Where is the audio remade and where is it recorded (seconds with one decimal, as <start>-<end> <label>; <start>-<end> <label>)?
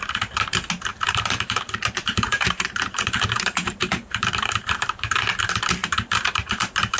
0.0-0.9 recorded; 0.9-5.1 remade; 5.1-5.8 recorded; 5.8-7.0 remade